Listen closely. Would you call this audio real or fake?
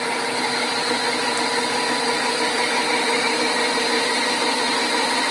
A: real